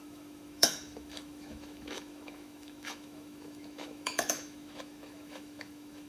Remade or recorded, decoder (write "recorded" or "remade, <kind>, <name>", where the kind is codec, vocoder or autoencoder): remade, autoencoder, DAC-VAE